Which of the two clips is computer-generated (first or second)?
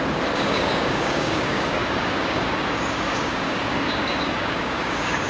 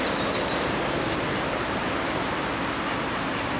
first